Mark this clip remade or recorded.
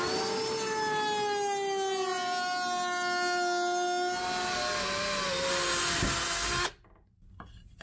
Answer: recorded